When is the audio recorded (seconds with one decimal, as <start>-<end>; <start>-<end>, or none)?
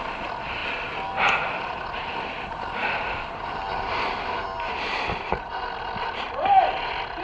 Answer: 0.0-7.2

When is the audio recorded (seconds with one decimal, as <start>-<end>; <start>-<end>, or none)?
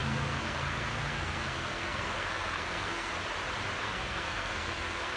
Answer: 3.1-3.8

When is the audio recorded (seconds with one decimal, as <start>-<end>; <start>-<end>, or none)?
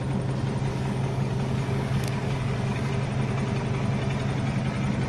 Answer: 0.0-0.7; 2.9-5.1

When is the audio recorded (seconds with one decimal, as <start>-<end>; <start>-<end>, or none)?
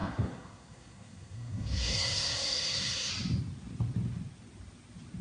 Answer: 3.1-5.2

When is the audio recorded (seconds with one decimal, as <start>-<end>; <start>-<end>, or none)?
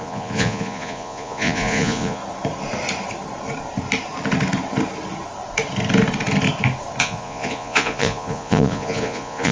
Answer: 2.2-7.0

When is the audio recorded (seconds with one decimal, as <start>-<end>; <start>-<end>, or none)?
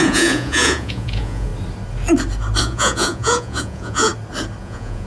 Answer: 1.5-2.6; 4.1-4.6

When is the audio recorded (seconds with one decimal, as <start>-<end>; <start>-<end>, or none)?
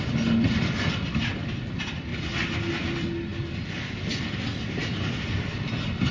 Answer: 0.0-6.1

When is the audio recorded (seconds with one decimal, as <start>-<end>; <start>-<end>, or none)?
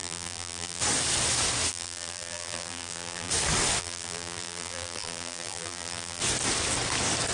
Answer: 0.8-1.7; 3.3-3.8; 6.2-7.3